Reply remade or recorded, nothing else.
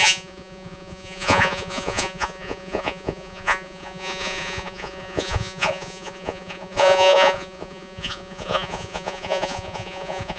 remade